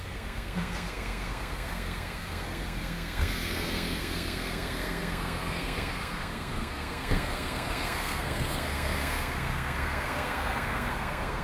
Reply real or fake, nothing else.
fake